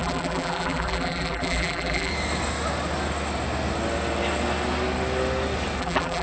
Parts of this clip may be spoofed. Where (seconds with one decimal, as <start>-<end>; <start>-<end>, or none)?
0.0-2.1; 5.8-6.2